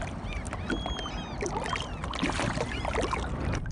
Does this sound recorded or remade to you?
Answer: recorded